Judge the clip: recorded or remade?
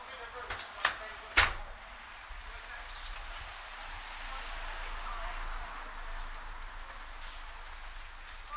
recorded